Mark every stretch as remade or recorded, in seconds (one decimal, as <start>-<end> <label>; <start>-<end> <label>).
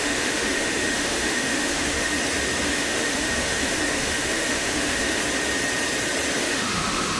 0.0-2.1 remade; 2.1-2.7 recorded; 2.7-5.2 remade; 5.2-6.4 recorded; 6.4-7.2 remade